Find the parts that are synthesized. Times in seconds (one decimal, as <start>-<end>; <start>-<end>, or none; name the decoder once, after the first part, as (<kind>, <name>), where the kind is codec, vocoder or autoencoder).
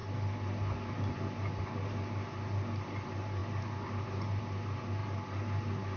none